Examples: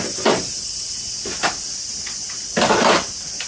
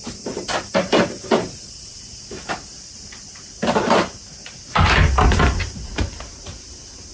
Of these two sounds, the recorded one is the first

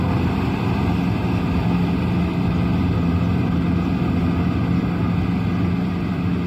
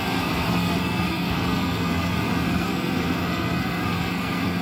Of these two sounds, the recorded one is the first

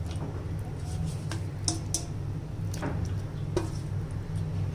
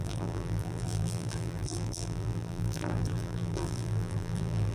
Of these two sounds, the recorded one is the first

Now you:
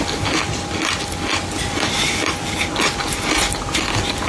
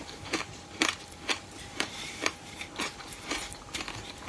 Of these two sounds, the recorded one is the first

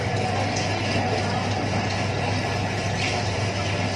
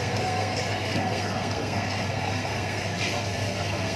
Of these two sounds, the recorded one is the first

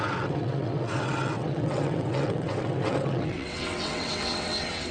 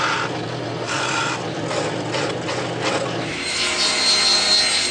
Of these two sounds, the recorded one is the second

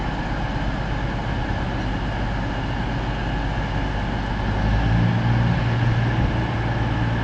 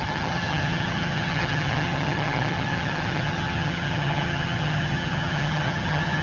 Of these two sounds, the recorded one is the first